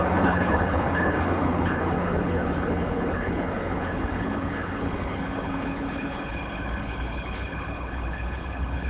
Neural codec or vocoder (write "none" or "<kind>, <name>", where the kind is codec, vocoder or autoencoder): codec, HILCodec